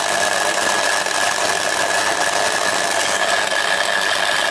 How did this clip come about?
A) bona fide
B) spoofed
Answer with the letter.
A